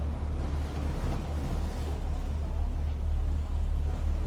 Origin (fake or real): real